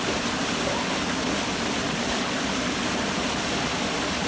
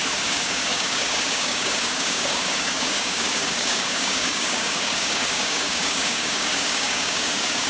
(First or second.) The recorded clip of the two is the first